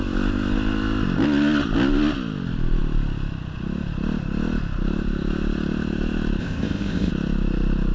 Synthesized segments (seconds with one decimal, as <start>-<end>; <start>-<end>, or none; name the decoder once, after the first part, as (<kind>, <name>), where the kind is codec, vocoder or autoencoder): 6.4-7.1 (codec, ZipCodec)